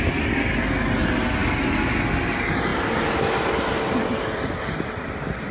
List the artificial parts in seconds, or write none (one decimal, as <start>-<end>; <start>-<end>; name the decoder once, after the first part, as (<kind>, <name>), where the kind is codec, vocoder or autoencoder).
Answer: none